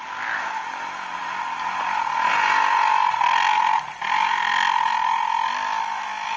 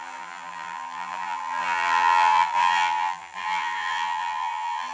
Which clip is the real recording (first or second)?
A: first